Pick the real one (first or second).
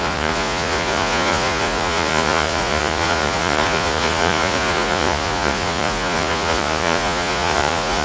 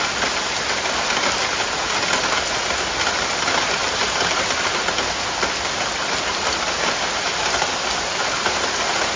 second